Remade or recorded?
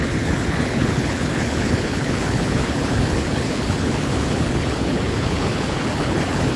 remade